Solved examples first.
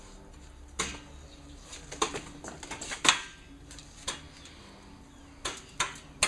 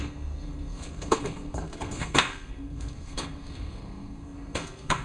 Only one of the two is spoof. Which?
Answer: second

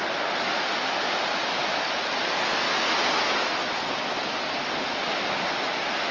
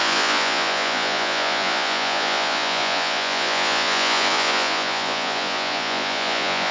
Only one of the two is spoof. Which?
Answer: second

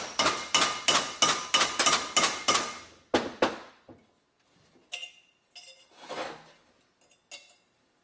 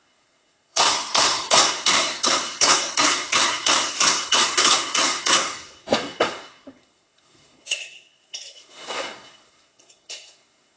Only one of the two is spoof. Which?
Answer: second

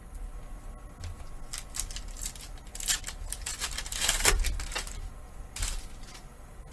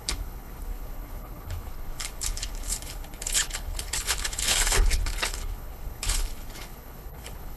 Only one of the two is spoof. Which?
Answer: second